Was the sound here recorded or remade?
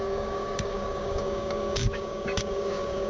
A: remade